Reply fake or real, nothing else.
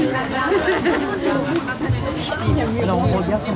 real